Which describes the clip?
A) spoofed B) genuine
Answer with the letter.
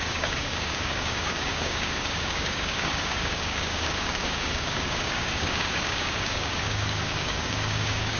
A